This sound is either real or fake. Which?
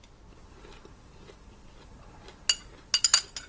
real